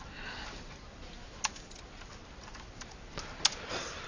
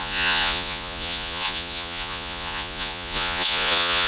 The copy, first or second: second